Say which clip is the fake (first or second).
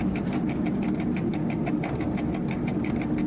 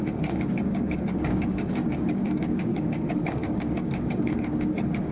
second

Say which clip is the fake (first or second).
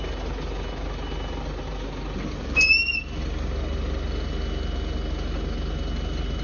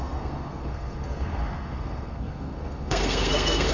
second